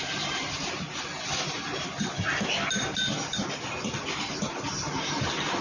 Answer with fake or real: real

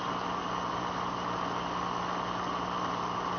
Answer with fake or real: real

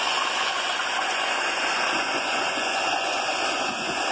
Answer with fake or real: fake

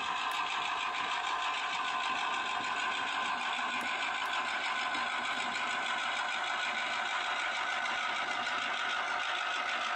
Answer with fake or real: real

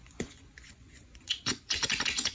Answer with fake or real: fake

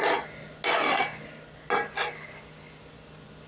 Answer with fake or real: real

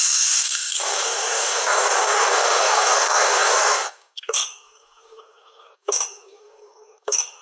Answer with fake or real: fake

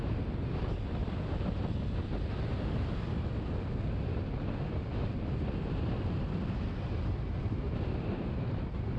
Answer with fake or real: real